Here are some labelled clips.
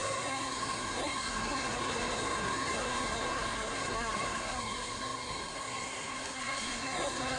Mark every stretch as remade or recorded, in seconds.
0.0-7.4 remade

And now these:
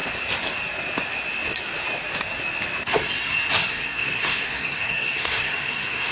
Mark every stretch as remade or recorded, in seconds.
0.0-3.7 recorded; 3.7-6.1 remade

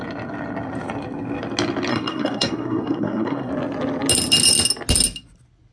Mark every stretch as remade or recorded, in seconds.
0.0-1.9 recorded; 1.9-3.5 remade; 3.5-5.7 recorded

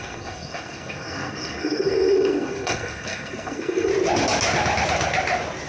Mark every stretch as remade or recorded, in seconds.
0.0-3.9 remade; 3.9-5.7 recorded

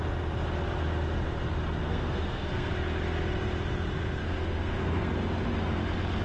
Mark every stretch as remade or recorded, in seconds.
0.0-1.9 recorded; 1.9-2.7 remade; 2.7-4.2 recorded; 4.2-5.1 remade; 5.1-6.2 recorded

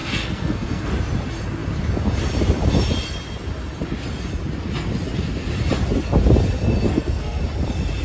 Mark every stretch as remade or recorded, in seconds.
0.0-0.9 remade; 0.9-6.9 recorded; 6.9-7.4 remade; 7.4-8.0 recorded

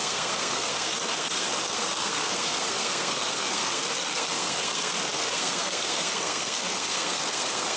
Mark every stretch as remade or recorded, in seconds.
0.0-7.8 remade